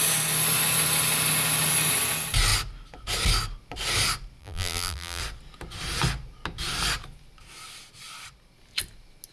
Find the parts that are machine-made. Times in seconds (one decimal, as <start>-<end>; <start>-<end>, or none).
4.4-5.2